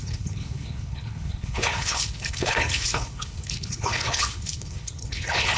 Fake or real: fake